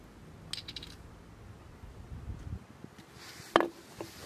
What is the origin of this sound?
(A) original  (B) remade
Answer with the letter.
A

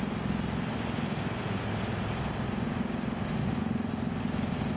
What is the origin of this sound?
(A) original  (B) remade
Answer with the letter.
A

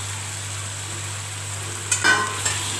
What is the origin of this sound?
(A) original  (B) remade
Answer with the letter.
A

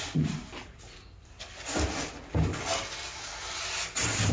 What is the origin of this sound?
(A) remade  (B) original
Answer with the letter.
B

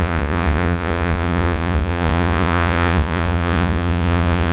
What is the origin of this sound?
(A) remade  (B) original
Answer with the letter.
A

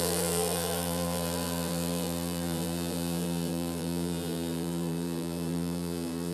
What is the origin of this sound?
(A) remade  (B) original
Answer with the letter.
A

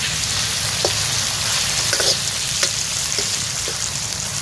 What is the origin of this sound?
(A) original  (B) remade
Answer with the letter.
A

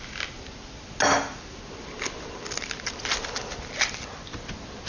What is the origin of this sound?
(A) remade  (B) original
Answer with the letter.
B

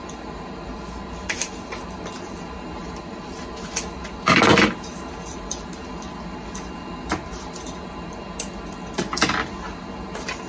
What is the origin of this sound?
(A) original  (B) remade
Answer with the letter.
A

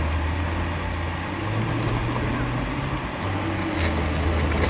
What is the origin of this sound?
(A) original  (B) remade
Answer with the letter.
A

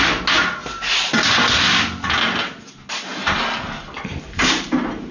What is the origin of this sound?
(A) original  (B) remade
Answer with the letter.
A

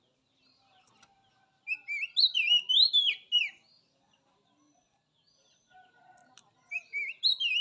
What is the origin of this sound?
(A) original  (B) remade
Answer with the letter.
A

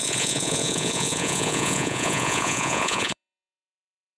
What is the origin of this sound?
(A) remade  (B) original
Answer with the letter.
A